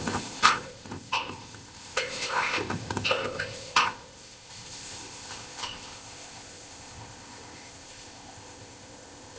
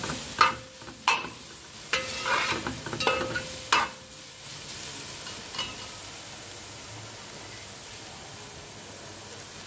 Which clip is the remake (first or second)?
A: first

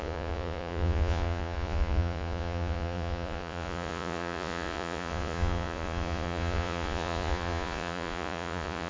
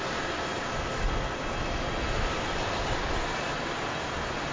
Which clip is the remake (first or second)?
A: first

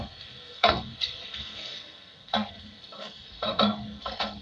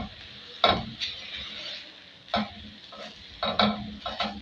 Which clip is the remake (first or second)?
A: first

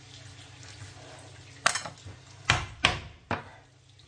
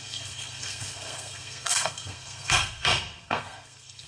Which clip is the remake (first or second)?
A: second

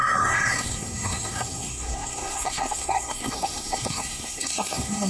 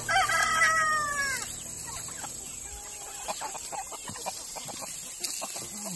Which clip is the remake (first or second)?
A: first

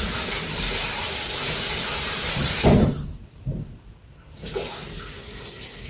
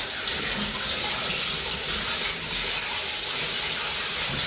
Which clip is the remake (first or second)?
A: first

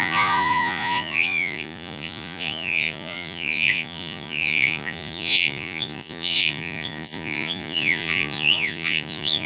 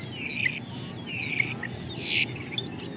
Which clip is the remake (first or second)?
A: first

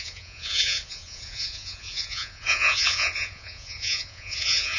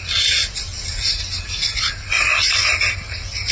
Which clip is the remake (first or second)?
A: first